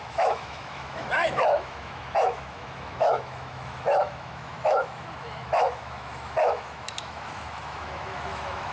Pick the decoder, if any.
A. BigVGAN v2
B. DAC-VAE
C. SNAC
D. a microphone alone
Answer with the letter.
B